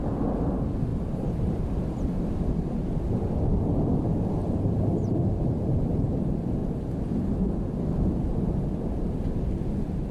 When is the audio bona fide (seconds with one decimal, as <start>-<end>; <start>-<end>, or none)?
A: 0.0-0.9; 1.6-4.4; 6.1-10.1